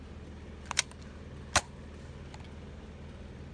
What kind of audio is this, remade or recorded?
recorded